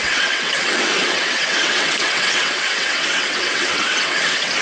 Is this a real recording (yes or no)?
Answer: no